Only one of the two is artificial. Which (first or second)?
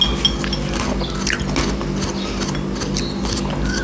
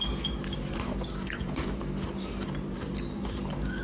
second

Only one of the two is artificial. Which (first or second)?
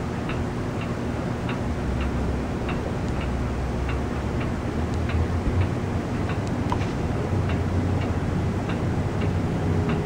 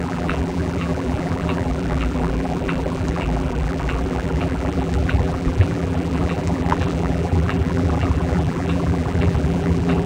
second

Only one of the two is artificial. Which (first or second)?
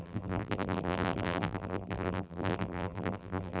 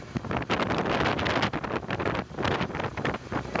first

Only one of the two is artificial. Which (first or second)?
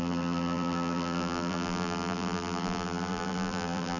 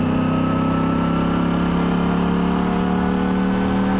first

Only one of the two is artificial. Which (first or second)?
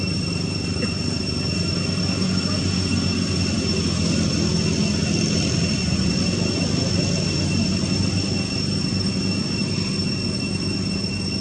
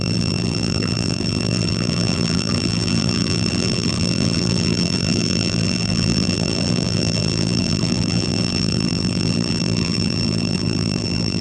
second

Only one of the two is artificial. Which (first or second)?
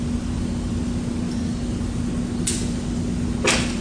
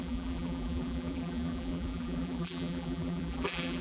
second